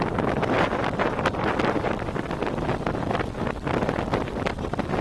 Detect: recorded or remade recorded